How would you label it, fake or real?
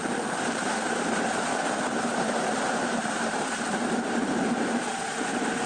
fake